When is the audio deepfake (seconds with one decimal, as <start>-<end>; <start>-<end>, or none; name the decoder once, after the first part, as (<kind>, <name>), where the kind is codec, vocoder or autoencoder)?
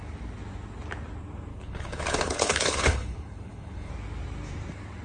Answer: 1.5-3.9 (codec, HILCodec)